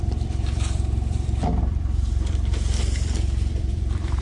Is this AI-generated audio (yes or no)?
yes